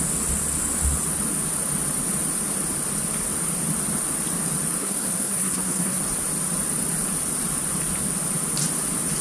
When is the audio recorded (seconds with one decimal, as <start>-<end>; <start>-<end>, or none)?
0.0-4.8; 6.0-9.2